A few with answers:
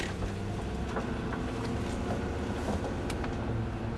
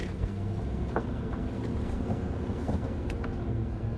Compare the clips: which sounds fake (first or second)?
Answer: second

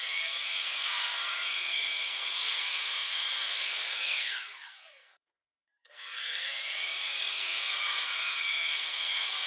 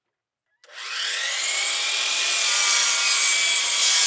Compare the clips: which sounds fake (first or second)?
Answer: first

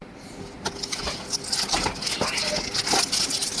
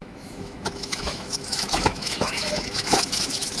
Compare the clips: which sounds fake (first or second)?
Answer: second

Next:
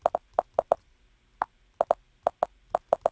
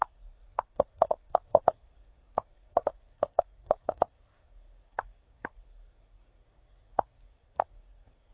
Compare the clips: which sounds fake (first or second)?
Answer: second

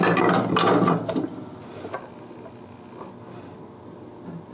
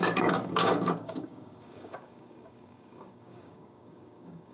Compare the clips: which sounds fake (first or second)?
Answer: second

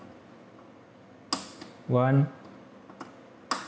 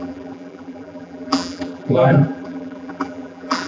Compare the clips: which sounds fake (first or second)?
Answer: second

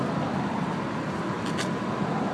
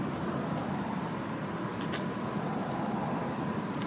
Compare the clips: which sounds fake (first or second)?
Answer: second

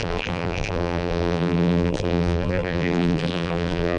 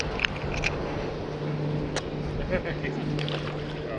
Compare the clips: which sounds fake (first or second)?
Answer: first